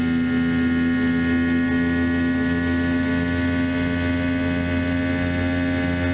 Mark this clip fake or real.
real